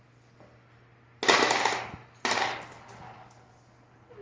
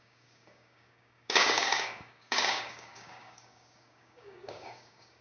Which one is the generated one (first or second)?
second